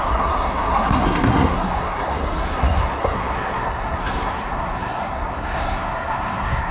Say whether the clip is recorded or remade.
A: remade